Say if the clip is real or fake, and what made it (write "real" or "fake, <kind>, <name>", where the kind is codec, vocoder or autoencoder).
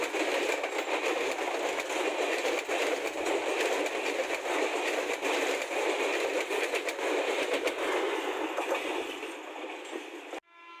real